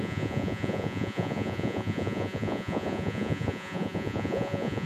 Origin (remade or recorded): remade